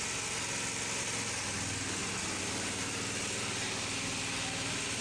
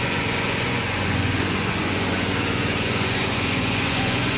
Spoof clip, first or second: second